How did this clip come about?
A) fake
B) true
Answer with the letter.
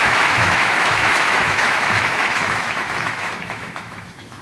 A